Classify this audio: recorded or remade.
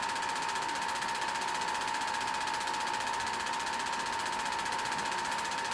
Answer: recorded